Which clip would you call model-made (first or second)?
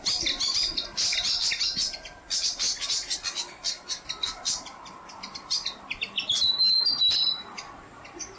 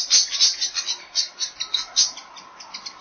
first